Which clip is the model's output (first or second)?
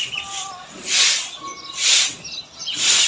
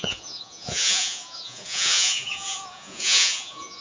second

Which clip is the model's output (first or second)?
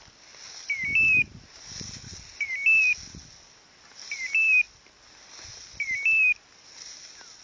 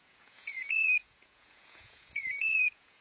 second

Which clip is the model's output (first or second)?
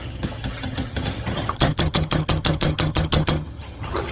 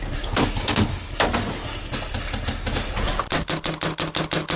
first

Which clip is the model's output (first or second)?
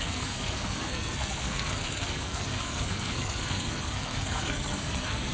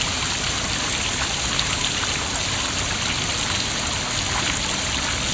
first